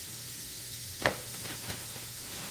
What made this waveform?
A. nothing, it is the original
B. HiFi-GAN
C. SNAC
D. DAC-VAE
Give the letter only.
D